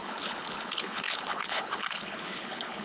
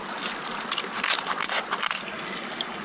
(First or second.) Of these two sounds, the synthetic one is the first